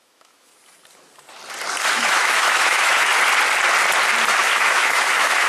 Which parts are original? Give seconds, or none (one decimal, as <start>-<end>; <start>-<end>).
0.5-1.9; 3.1-4.4